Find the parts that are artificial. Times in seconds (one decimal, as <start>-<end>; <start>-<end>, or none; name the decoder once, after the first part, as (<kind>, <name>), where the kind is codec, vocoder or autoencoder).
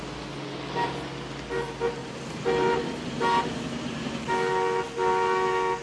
2.0-4.1 (vocoder, BigVGAN v2)